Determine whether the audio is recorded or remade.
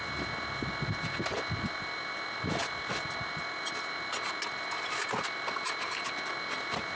recorded